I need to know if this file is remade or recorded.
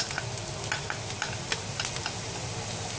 recorded